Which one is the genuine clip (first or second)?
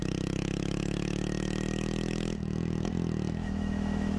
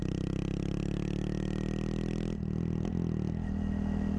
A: second